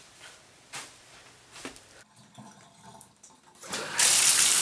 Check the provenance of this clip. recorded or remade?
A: remade